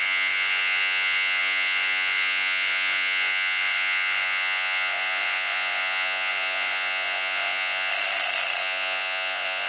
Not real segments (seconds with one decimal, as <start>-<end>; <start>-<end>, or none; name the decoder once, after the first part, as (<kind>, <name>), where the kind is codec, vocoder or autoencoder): 0.0-7.9 (vocoder, Vocos); 8.6-9.7